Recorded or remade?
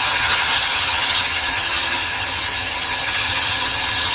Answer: remade